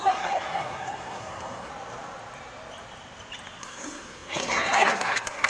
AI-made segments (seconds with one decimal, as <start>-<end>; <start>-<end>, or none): 0.0-1.7; 3.6-5.5